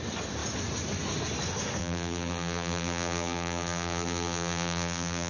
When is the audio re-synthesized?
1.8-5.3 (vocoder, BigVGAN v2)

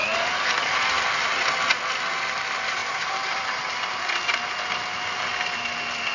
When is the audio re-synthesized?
2.8-3.9 (vocoder, BigVGAN v2)